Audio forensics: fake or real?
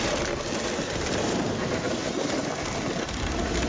real